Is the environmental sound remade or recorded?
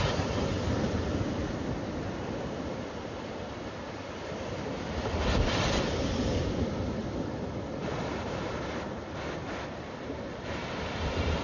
recorded